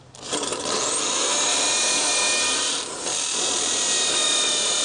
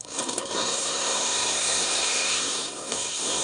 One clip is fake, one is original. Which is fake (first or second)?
second